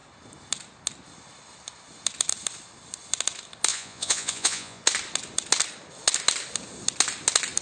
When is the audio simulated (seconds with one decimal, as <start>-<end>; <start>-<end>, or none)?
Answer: 3.7-4.8